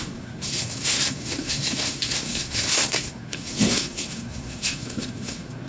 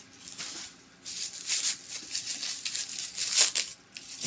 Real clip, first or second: second